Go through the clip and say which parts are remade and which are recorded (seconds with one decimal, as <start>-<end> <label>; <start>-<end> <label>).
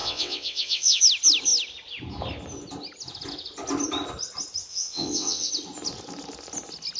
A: 0.0-1.0 remade; 1.0-4.7 recorded; 4.7-5.5 remade; 5.5-7.0 recorded